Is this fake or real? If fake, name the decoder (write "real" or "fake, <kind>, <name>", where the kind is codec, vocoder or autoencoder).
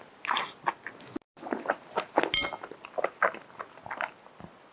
real